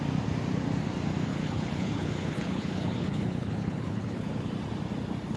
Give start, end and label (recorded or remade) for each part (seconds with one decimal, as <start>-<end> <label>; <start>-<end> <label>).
0.0-1.3 recorded; 1.3-4.5 remade; 4.5-5.4 recorded